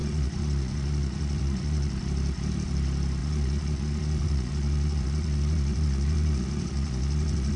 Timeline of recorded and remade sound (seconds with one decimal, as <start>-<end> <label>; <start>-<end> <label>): 0.0-1.9 remade; 1.9-3.2 recorded; 3.2-7.6 remade